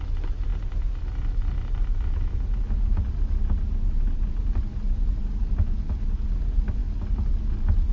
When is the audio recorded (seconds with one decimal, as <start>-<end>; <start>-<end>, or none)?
0.0-7.9